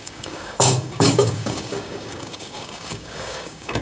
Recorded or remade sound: remade